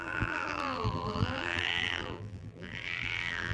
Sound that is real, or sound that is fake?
fake